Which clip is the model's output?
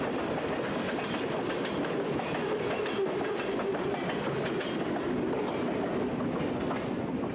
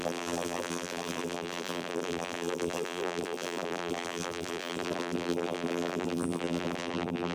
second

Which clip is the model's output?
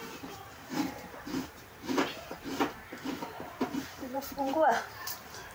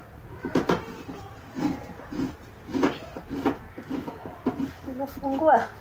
first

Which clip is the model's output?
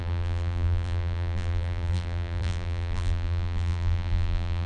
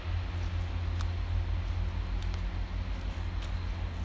first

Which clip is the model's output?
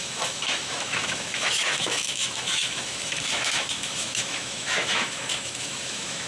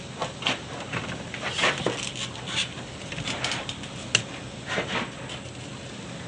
first